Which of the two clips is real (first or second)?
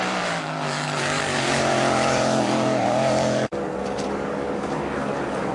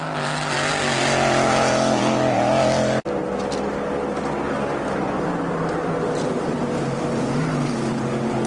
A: second